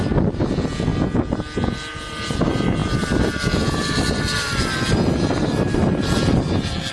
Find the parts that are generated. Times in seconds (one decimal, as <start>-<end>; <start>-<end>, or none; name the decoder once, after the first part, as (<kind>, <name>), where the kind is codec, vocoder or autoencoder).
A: 2.8-6.9 (vocoder, BigVGAN v2)